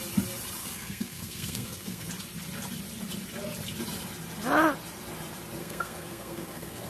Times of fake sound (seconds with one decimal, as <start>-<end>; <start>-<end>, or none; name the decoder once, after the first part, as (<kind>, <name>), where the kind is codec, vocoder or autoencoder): 0.6-2.1 (codec, SNAC); 5.6-6.9